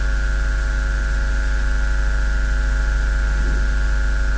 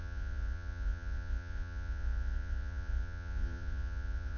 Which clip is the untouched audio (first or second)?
first